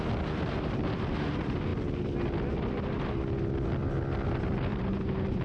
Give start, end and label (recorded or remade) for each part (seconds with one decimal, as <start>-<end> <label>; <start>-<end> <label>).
0.0-4.7 recorded; 4.7-5.4 remade